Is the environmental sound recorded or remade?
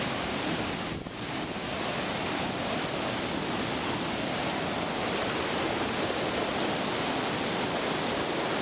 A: recorded